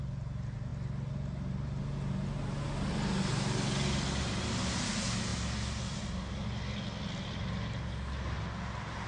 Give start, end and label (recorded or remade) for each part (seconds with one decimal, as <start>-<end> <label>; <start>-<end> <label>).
0.0-9.1 recorded